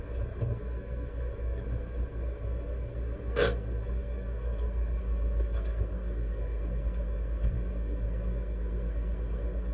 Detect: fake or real fake